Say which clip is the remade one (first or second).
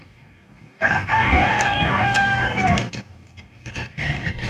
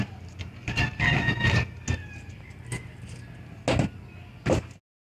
first